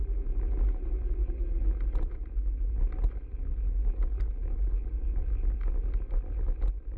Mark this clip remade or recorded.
recorded